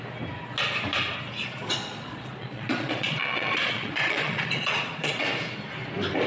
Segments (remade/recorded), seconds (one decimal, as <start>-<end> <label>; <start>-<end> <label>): 0.0-1.4 recorded; 1.4-5.2 remade; 5.2-6.3 recorded